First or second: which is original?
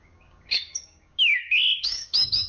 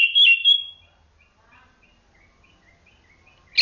second